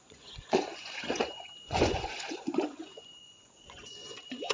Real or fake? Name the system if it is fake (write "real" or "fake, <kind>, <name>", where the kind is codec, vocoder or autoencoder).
fake, vocoder, Vocos